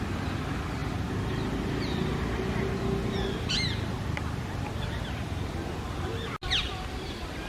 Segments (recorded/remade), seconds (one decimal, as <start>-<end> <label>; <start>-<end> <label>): 0.0-7.5 recorded